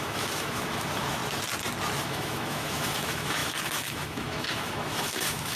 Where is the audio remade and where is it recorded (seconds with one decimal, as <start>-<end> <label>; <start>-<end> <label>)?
0.0-1.2 remade; 1.2-2.0 recorded; 2.0-5.6 remade

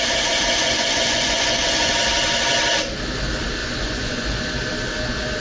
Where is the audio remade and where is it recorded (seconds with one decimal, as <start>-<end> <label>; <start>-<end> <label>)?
0.0-0.6 recorded; 0.6-1.9 remade; 1.9-3.6 recorded; 3.6-4.4 remade; 4.4-5.4 recorded

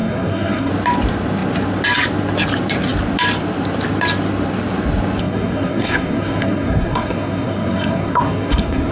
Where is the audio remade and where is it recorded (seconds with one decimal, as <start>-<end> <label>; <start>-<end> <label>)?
0.0-0.7 remade; 0.7-5.2 recorded; 5.2-8.9 remade